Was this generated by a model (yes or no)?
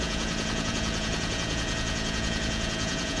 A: yes